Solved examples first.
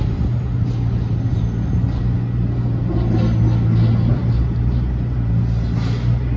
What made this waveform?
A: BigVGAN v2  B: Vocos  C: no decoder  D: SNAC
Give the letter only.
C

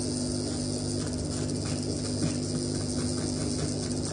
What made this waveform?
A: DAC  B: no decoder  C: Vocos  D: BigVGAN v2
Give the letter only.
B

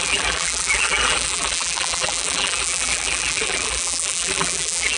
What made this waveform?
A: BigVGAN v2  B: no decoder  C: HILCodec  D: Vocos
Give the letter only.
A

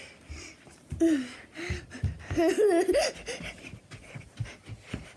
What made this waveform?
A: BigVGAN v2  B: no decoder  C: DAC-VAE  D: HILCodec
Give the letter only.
B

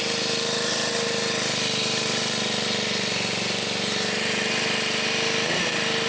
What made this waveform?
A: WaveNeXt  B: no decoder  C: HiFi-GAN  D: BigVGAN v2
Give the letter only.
B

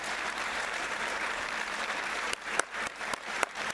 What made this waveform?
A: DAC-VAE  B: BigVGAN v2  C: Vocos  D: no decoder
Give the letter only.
B